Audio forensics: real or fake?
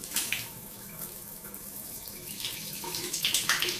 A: fake